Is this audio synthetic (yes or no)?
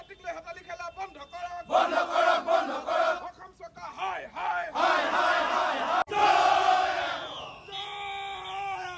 no